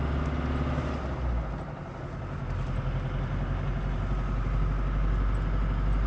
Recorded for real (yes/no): yes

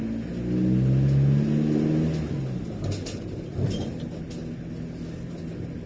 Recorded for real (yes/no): yes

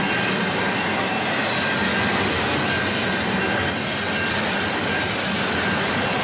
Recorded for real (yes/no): yes